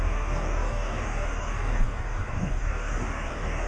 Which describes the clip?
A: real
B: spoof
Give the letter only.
B